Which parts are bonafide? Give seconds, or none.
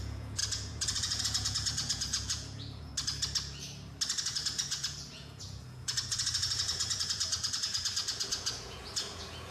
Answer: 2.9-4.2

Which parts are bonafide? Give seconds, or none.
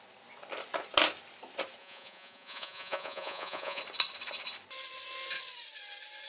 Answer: 0.0-1.8; 3.8-6.3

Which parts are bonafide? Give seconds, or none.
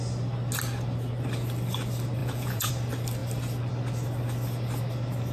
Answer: 0.0-2.2; 2.7-5.3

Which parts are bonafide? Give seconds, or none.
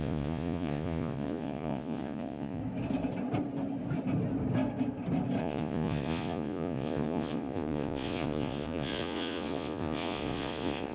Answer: 2.6-5.4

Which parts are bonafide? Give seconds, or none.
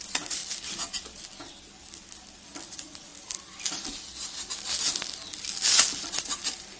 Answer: 0.4-2.7; 3.1-6.8